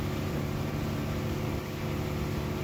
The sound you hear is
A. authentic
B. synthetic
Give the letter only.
A